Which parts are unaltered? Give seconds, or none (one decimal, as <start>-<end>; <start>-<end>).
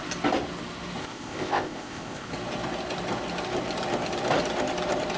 0.0-1.0; 2.3-5.2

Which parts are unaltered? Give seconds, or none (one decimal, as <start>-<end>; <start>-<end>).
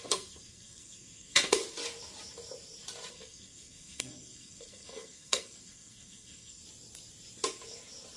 1.6-3.1; 6.6-8.2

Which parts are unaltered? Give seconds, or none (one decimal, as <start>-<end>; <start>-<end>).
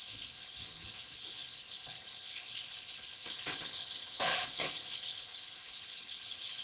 none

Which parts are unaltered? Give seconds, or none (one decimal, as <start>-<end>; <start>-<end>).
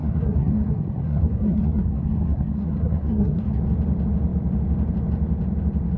3.6-6.0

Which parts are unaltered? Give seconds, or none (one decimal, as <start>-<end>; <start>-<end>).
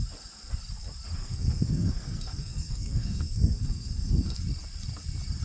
0.0-1.2; 4.4-5.4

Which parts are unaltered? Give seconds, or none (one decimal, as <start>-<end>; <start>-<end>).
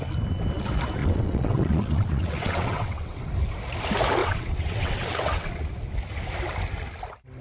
0.0-1.0; 3.2-4.2; 5.7-7.4